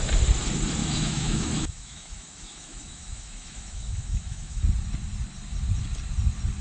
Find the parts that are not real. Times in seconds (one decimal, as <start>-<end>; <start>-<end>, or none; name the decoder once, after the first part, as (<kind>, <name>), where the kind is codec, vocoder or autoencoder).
0.8-4.6 (autoencoder, DAC-VAE)

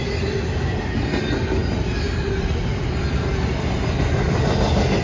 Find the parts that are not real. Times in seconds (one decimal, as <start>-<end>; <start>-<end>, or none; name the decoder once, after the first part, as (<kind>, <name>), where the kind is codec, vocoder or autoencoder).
none

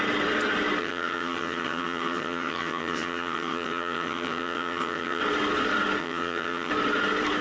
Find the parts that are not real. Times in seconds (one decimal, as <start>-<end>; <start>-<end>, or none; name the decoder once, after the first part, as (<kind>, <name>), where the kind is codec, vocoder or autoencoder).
0.8-5.2 (vocoder, HiFi-GAN); 6.0-6.7

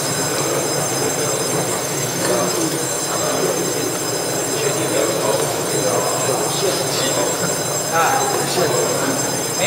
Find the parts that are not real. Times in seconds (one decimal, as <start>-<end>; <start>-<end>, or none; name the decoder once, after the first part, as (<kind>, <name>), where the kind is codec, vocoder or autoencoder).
1.7-3.0 (autoencoder, DAC-VAE); 5.0-5.7; 7.9-9.1

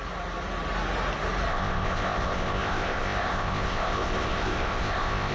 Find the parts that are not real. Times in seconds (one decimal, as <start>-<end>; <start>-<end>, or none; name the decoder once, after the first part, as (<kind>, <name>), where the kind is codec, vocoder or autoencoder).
1.5-5.3 (codec, ZipCodec)